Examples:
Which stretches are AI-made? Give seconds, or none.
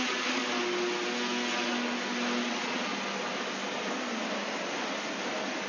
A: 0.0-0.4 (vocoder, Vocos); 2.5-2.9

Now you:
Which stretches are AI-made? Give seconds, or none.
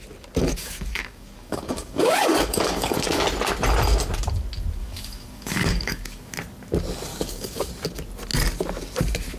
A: 0.4-3.2 (codec, DAC); 4.8-6.3; 7.1-7.7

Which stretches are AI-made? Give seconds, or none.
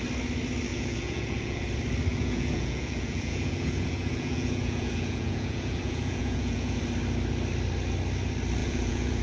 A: 0.7-1.7 (vocoder, Vocos); 2.1-6.8; 8.6-9.2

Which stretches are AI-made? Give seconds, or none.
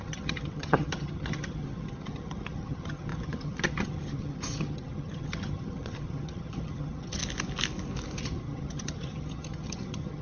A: 0.0-7.2 (vocoder, HiFi-GAN); 8.2-10.2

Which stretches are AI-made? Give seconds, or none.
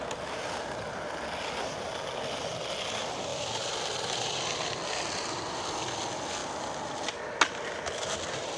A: 3.3-5.4 (vocoder, BigVGAN v2)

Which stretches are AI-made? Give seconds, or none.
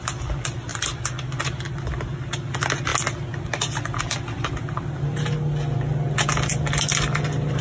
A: 0.7-1.4 (vocoder, BigVGAN v2)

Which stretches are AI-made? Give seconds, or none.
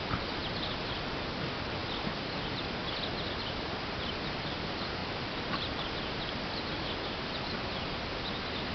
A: 0.4-1.2 (vocoder, BigVGAN v2); 5.0-6.2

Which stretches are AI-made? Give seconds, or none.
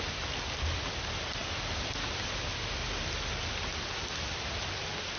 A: none